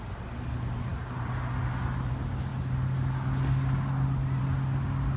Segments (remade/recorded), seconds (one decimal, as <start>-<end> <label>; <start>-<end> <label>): 0.0-5.2 recorded